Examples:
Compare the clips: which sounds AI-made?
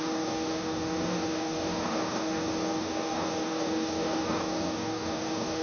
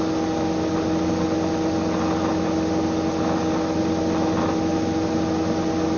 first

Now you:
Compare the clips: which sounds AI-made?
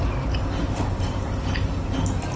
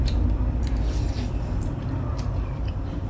second